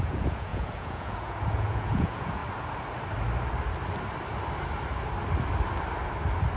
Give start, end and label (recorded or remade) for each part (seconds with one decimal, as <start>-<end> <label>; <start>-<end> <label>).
0.0-2.4 remade; 2.4-6.6 recorded